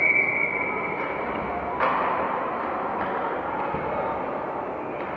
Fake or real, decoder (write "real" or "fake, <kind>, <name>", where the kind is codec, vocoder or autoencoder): real